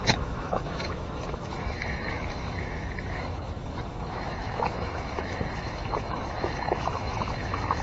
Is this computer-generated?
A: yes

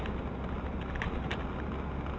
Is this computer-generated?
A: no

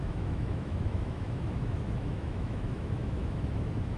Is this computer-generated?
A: yes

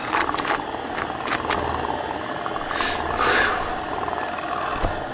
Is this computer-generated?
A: no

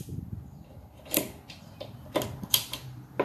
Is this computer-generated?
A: no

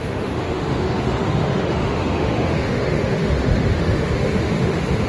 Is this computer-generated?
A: yes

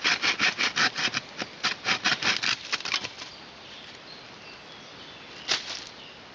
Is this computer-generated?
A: no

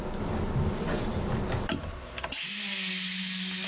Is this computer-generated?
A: no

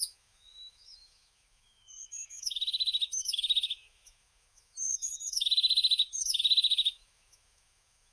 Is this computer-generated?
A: yes